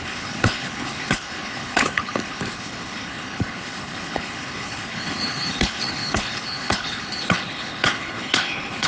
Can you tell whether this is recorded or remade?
remade